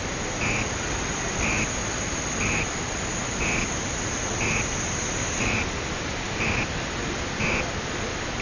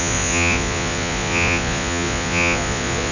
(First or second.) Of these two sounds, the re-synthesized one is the second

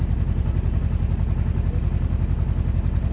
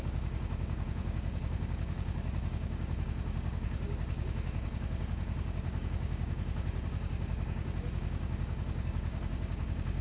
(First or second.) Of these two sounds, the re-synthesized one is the second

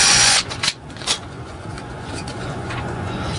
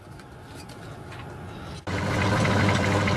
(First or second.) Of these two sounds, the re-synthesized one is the first